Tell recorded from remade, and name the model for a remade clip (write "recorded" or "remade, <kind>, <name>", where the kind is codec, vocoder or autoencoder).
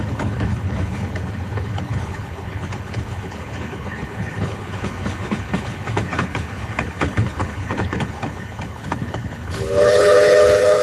remade, codec, HILCodec